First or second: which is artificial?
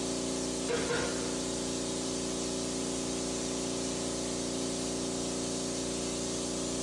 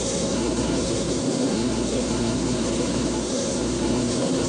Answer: second